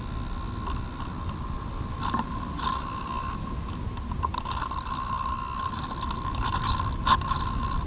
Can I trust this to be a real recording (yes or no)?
yes